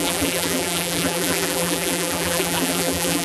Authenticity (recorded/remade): remade